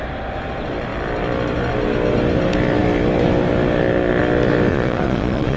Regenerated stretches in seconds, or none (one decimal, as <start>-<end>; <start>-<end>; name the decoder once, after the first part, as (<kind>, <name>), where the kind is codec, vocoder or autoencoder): 4.7-5.6 (vocoder, Vocos)